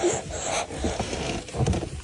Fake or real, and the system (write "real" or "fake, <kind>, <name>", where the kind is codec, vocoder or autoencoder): real